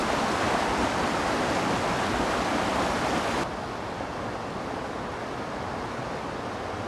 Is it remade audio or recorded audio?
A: recorded